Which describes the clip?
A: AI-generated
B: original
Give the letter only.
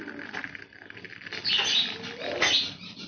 B